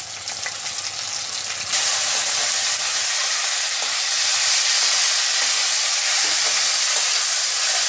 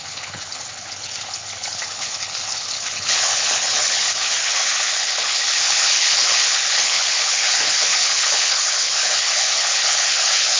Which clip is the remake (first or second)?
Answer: second